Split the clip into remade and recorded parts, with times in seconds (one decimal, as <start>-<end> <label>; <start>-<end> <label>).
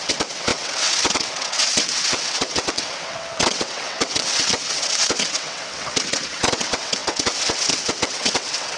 0.0-8.8 remade